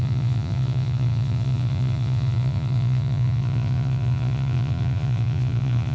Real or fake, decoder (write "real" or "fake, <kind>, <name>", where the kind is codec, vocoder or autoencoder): fake, vocoder, Vocos